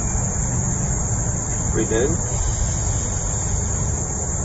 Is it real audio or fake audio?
real